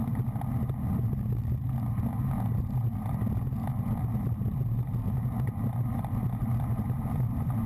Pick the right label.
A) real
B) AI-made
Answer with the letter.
A